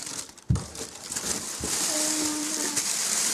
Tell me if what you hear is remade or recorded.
remade